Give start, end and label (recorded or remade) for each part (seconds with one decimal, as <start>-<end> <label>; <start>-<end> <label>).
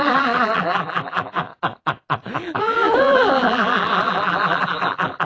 0.0-1.5 remade; 1.5-2.4 recorded; 2.4-5.2 remade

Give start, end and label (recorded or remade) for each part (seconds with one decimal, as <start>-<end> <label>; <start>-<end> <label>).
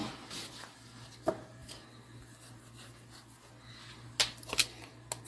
0.0-5.3 recorded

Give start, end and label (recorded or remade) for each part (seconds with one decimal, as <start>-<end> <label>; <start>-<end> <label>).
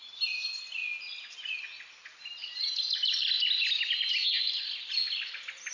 0.0-5.7 recorded